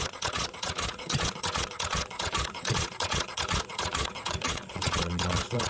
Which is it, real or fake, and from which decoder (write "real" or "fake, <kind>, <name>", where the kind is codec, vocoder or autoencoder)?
fake, vocoder, Vocos